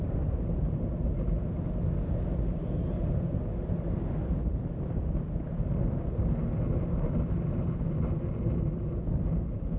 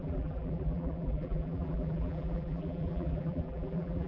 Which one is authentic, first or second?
first